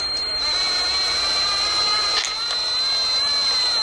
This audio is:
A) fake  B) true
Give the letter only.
B